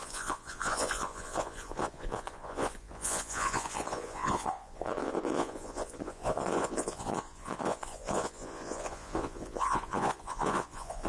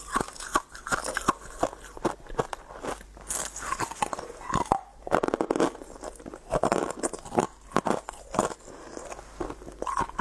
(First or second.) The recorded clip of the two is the second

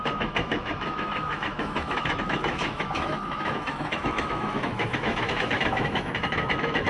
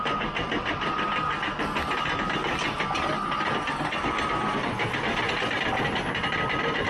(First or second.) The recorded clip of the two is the second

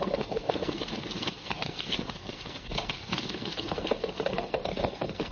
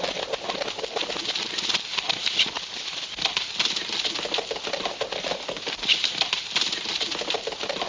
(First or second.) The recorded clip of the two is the second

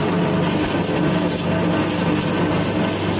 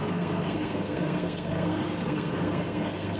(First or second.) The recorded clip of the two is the first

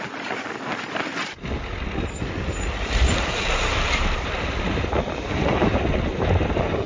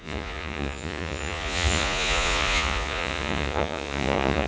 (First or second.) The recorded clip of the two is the first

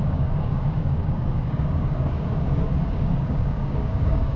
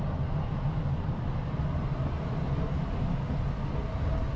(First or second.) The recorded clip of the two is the second